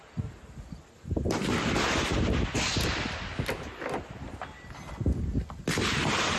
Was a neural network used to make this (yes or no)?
no